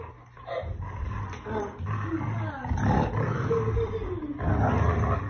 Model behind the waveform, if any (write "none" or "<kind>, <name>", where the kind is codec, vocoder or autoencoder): none